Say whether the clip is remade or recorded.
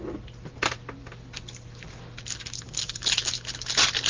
recorded